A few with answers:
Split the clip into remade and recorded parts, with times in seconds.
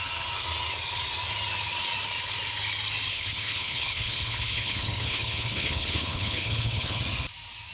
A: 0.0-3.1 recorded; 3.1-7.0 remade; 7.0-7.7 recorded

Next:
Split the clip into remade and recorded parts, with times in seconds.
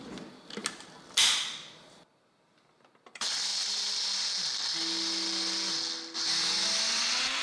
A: 0.0-7.4 recorded